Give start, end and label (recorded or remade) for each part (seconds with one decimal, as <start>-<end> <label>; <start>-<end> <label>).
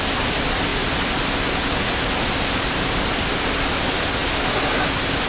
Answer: 0.0-5.3 recorded